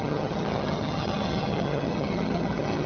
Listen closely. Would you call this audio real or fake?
fake